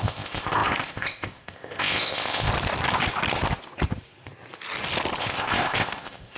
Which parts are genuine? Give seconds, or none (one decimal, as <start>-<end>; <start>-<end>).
2.5-5.2